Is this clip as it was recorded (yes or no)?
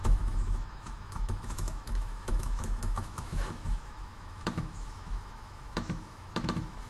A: no